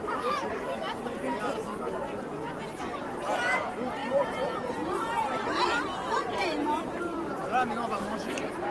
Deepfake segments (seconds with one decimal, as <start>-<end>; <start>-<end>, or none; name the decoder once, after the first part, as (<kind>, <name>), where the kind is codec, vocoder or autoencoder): 0.0-1.0 (vocoder, BigVGAN v2); 3.4-8.7